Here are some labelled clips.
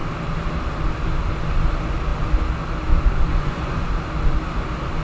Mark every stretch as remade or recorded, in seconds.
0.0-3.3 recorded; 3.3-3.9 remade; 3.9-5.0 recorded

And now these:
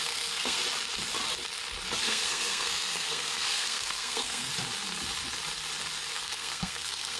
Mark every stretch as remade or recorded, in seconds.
0.0-0.6 remade; 0.6-2.0 recorded; 2.0-4.5 remade; 4.5-6.1 recorded; 6.1-7.2 remade

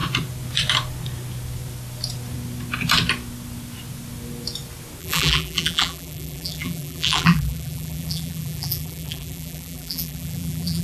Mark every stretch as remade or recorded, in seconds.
0.0-5.0 recorded; 5.0-10.8 remade

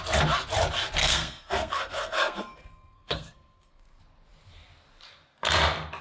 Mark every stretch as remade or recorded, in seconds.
0.0-1.0 recorded; 1.0-4.0 remade; 4.0-6.0 recorded

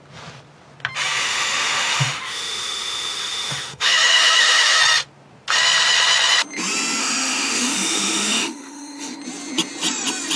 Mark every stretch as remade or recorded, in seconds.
0.0-1.2 recorded; 1.2-4.8 remade; 4.8-7.0 recorded; 7.0-9.2 remade; 9.2-10.4 recorded